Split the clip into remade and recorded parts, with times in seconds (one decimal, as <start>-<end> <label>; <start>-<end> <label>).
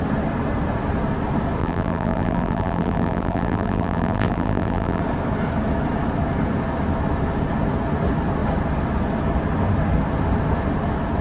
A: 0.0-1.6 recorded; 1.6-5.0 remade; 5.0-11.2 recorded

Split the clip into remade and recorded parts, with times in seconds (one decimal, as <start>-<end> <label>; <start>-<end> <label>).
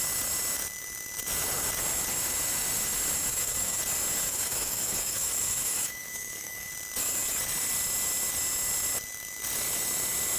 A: 0.0-3.3 recorded; 3.3-3.8 remade; 3.8-4.3 recorded; 4.3-6.7 remade; 6.7-10.4 recorded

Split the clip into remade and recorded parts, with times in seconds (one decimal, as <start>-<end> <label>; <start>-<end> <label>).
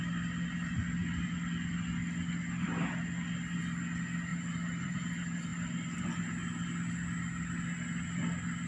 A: 0.0-4.3 recorded; 4.3-5.1 remade; 5.1-8.7 recorded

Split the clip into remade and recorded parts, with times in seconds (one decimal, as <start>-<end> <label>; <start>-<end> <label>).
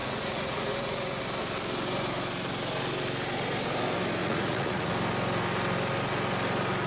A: 0.0-1.2 remade; 1.2-4.2 recorded; 4.2-4.9 remade; 4.9-6.9 recorded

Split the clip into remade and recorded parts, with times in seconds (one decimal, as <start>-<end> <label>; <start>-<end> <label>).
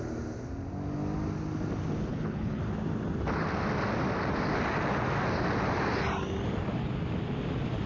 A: 0.0-2.1 recorded; 2.1-2.6 remade; 2.6-7.9 recorded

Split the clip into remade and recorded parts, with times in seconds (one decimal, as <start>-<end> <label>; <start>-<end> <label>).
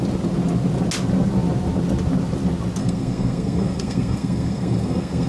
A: 0.0-2.8 recorded; 2.8-5.3 remade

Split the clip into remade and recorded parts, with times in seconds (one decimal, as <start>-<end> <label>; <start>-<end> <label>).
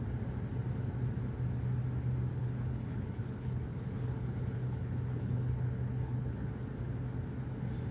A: 0.0-2.3 recorded; 2.3-6.5 remade; 6.5-7.9 recorded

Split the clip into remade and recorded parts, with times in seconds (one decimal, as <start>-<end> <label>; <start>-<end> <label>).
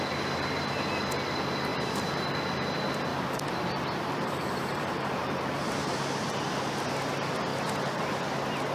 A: 0.0-1.7 recorded; 1.7-2.3 remade; 2.3-3.1 recorded; 3.1-6.0 remade; 6.0-7.5 recorded; 7.5-8.2 remade; 8.2-8.7 recorded